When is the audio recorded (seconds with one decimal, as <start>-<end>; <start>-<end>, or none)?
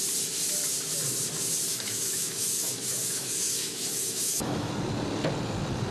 0.0-1.7; 4.7-5.9